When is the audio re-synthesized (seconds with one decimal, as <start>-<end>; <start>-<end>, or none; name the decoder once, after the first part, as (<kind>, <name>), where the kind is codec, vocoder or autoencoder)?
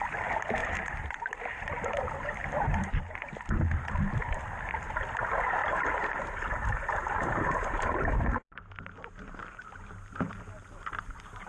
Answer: 0.6-4.1 (vocoder, BigVGAN v2); 5.6-8.6; 9.4-11.0